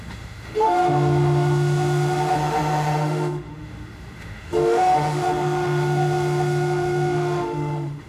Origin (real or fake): fake